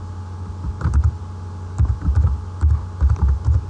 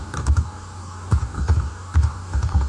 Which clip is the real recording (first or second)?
first